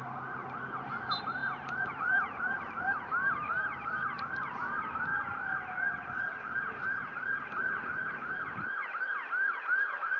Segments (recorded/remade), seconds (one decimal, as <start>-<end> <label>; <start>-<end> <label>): 0.0-0.4 remade; 0.4-0.9 recorded; 0.9-5.1 remade; 5.1-6.6 recorded; 6.6-10.2 remade